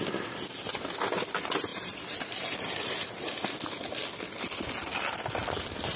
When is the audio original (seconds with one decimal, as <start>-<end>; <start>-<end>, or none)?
0.0-1.7; 3.3-6.0